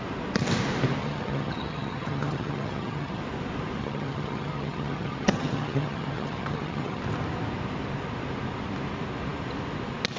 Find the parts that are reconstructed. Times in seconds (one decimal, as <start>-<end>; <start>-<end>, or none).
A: 1.0-3.2; 3.8-7.0